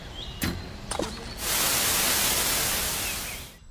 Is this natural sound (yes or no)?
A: yes